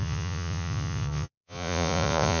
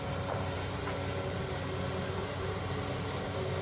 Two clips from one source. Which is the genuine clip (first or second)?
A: second